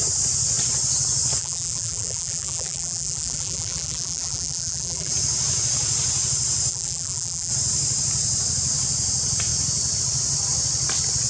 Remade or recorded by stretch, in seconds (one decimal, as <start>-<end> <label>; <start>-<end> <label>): 0.0-1.4 recorded; 1.4-5.1 remade; 5.1-6.7 recorded; 6.7-7.5 remade; 7.5-11.3 recorded